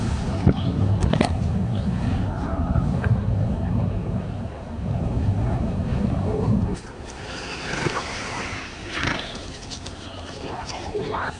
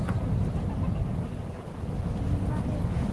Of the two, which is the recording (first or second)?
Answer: second